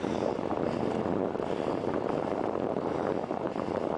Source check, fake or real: fake